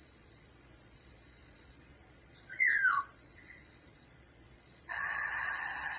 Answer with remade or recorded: remade